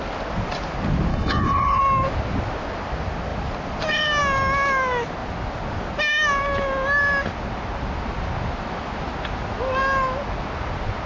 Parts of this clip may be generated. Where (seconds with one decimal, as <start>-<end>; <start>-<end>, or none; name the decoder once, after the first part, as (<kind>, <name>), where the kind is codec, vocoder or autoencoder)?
1.1-1.8 (codec, HILCodec)